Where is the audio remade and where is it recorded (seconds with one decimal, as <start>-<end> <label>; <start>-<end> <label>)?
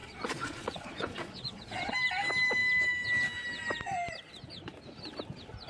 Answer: 0.0-1.9 remade; 1.9-5.7 recorded